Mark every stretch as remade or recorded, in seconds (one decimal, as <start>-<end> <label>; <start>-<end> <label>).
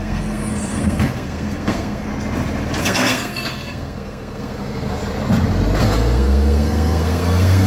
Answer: 0.0-2.1 remade; 2.1-2.8 recorded; 2.8-5.0 remade; 5.0-5.8 recorded; 5.8-7.7 remade